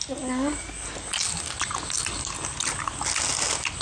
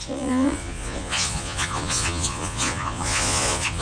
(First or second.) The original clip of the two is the first